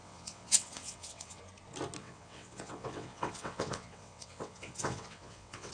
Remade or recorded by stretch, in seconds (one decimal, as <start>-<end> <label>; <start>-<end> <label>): 0.0-1.4 remade; 1.4-2.0 recorded; 2.0-5.7 remade